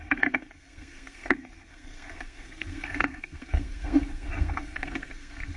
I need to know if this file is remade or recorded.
remade